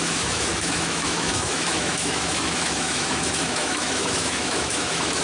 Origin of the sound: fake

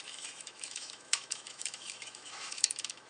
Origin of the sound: fake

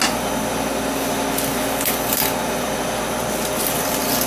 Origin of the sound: real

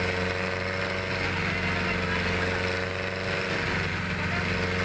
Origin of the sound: real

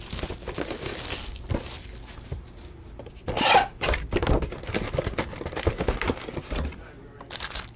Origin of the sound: real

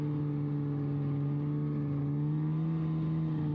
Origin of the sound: real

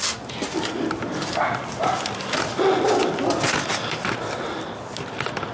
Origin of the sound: real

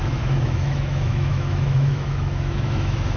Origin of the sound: fake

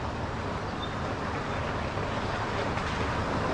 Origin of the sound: real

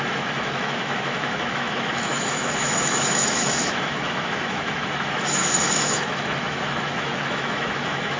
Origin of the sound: fake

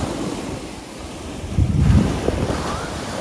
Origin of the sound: real